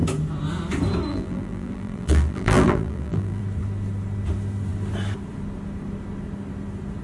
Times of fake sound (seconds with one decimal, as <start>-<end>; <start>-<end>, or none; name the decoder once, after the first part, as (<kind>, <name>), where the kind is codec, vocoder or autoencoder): 1.1-3.4 (vocoder, BigVGAN v2)